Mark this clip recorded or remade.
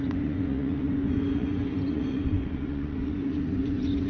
remade